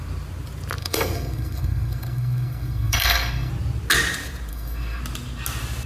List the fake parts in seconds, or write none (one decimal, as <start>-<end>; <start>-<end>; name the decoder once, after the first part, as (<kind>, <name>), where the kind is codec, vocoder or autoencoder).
0.8-3.5 (codec, SNAC); 4.5-5.0